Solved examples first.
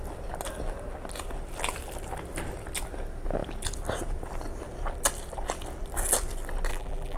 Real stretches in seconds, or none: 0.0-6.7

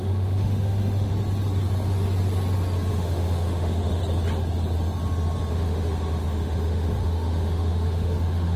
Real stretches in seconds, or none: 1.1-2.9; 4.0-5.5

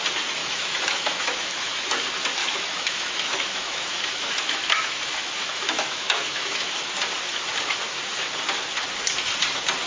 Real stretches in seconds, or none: 0.0-0.4; 2.0-2.4; 6.9-9.9

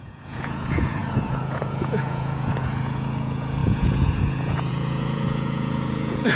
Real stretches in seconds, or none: none

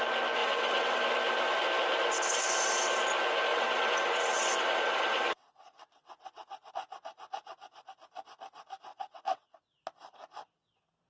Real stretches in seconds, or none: 0.0-0.4; 1.0-3.5; 6.7-8.9; 9.6-11.1

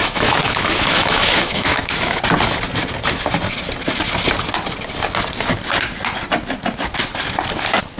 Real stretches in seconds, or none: 2.2-8.0